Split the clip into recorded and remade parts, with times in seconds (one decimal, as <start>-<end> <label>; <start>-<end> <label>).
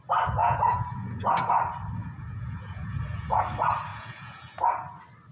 0.0-0.4 recorded; 0.4-1.5 remade; 1.5-2.0 recorded; 2.0-3.4 remade; 3.4-3.9 recorded; 3.9-4.7 remade; 4.7-5.3 recorded